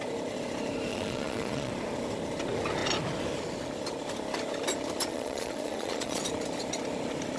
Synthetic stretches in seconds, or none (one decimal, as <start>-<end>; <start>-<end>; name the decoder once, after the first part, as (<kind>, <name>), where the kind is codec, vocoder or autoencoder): 0.9-1.7 (vocoder, Vocos); 5.1-6.2